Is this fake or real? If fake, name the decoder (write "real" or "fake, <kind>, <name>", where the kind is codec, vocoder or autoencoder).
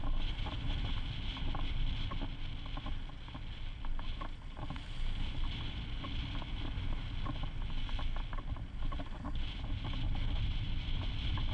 real